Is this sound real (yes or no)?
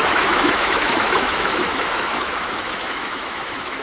no